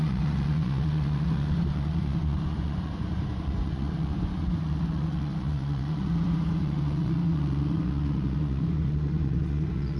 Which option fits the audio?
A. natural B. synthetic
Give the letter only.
B